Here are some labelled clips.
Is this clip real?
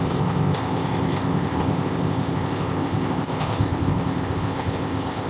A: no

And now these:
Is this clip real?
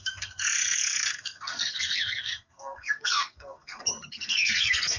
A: no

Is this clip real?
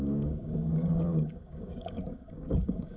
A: no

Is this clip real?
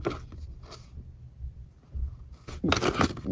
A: yes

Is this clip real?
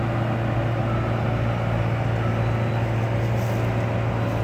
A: yes